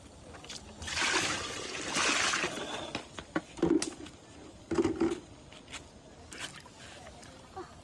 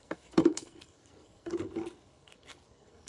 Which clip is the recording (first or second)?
first